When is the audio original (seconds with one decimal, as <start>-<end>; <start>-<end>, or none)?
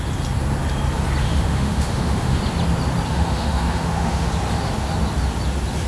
0.0-1.2; 2.4-3.1; 4.3-5.9